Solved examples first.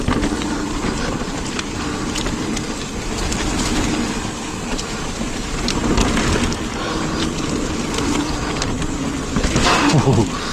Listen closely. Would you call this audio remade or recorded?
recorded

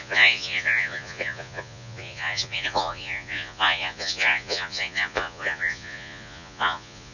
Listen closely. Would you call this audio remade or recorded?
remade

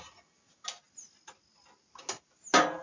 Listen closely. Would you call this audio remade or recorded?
recorded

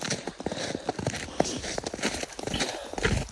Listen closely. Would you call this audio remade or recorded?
recorded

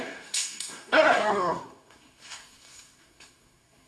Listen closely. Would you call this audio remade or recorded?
remade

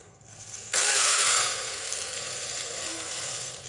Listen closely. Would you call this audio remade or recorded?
remade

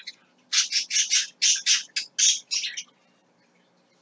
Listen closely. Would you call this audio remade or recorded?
recorded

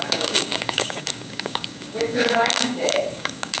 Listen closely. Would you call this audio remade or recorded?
remade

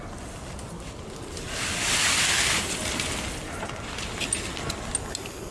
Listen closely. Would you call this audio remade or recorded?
recorded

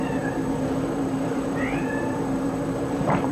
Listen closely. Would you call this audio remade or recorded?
remade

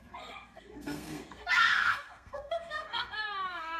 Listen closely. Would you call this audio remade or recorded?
remade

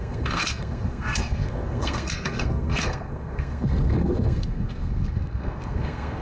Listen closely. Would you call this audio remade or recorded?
remade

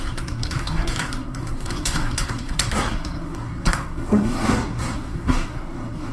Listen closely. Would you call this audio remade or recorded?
remade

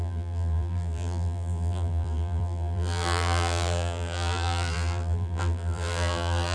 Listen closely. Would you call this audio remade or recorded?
remade